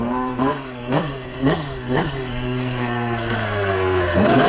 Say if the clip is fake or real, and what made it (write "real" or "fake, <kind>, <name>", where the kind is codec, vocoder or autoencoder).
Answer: fake, codec, SNAC